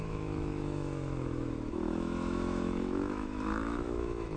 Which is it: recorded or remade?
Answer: remade